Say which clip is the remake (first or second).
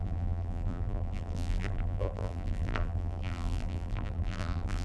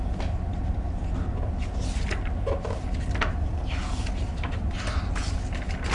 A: first